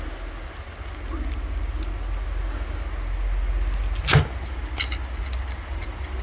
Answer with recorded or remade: recorded